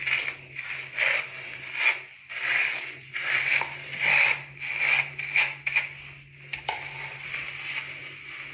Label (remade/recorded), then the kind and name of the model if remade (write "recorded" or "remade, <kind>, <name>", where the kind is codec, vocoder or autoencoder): recorded